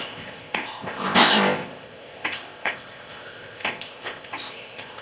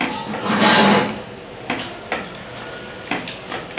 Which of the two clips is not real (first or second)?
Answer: first